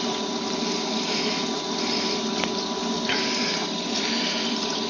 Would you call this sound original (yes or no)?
yes